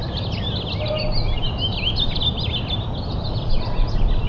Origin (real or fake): real